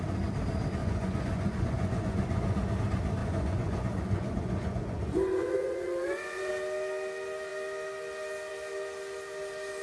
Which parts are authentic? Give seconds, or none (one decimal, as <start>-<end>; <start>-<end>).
0.0-0.8; 2.7-3.2; 6.5-9.8